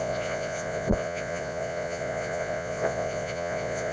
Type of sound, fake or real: fake